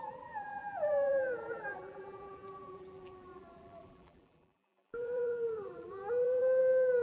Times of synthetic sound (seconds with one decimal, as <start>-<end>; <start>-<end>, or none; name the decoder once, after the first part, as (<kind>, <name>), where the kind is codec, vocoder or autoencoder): 0.0-7.0 (vocoder, BigVGAN v2)